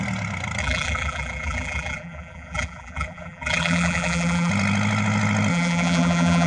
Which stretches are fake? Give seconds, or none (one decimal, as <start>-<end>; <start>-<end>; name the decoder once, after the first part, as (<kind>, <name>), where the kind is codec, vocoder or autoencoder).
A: 0.6-4.5 (vocoder, BigVGAN v2); 5.5-6.5